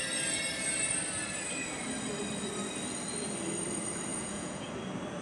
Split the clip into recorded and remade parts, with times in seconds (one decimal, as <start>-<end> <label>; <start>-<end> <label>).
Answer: 0.0-4.1 recorded; 4.1-4.7 remade; 4.7-5.2 recorded